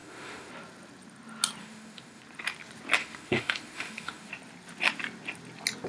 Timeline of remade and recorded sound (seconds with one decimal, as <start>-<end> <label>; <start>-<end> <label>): 0.0-0.5 remade; 0.5-1.6 recorded; 1.6-2.2 remade; 2.2-3.0 recorded; 3.0-4.3 remade; 4.3-5.9 recorded